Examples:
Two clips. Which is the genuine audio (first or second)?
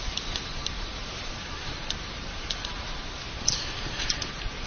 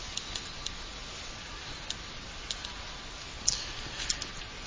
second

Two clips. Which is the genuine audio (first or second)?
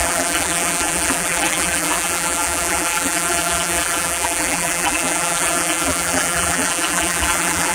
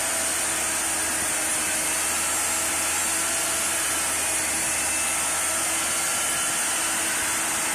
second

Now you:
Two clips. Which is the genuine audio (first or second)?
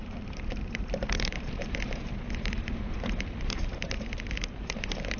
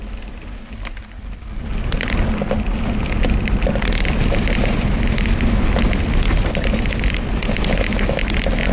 second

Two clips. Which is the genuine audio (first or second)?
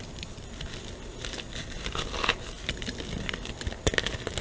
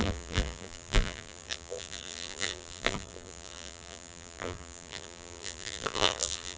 first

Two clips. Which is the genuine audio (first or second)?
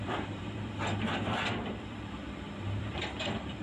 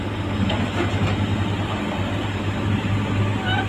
second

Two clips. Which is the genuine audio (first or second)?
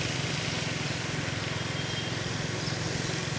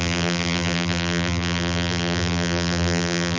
first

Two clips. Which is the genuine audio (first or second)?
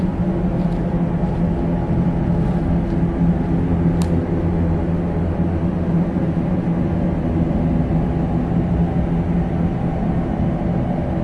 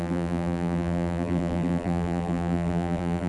first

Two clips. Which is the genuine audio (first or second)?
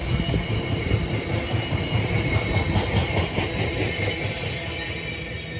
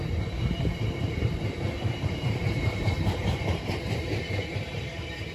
first